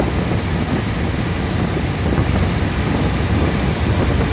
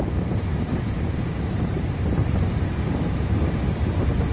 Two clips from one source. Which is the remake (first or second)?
second